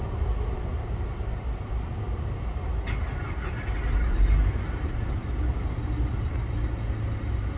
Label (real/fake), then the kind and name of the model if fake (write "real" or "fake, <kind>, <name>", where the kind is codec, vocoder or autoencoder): real